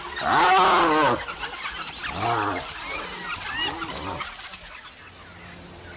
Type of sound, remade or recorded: recorded